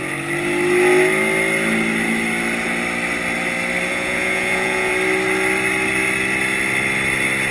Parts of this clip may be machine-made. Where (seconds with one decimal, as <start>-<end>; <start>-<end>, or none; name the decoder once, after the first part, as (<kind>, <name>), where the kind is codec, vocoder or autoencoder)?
3.9-4.9 (vocoder, Vocos)